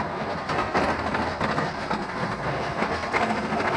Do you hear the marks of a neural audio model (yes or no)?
yes